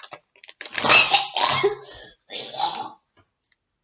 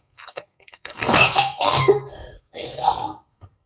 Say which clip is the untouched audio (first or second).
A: first